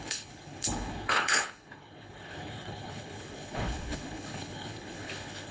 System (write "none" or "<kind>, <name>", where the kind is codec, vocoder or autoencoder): codec, HILCodec